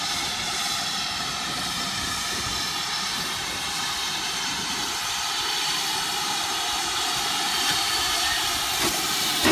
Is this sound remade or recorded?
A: remade